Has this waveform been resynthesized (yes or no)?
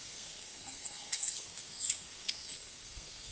yes